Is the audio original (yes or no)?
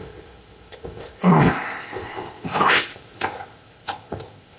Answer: no